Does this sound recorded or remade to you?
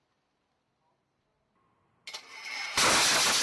recorded